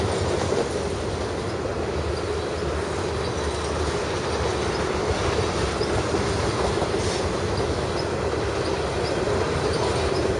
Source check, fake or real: real